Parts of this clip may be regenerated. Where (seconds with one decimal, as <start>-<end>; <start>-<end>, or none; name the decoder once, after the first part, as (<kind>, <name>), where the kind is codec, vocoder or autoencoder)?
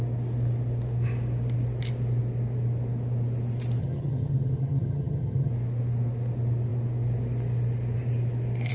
3.8-5.5 (vocoder, HiFi-GAN)